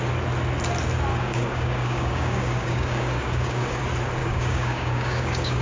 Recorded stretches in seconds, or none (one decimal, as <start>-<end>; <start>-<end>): 0.0-1.1; 3.8-4.2